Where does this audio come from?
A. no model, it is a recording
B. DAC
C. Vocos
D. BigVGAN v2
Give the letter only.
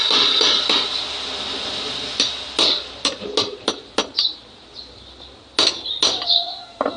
A